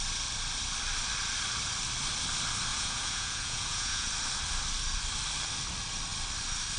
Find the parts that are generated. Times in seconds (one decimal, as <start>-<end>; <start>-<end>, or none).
2.7-4.1